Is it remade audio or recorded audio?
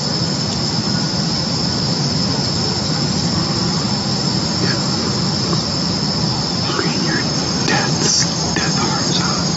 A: recorded